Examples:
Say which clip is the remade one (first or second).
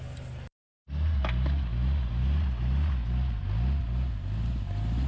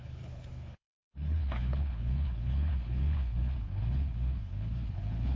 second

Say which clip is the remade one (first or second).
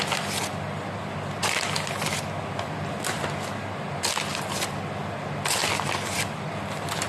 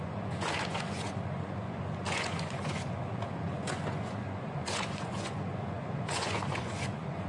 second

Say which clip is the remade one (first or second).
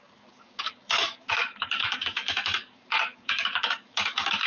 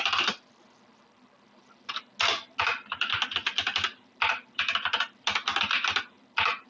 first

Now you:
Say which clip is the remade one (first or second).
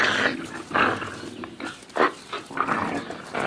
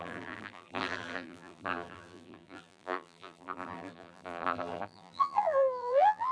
second